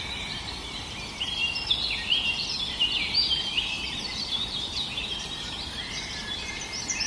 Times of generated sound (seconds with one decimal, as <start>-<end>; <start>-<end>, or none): 0.0-1.4; 3.1-7.1